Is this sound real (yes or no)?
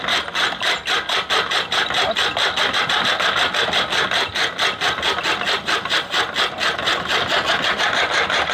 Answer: yes